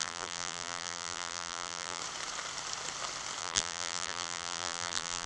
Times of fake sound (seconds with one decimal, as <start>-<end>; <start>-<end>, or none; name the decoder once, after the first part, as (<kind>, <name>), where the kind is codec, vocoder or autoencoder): 0.0-2.0 (vocoder, BigVGAN v2); 3.4-5.3